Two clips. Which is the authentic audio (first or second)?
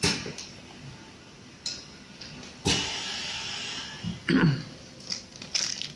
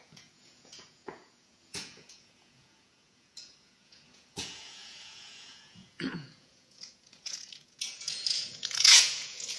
first